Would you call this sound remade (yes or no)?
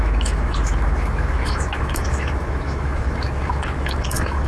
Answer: yes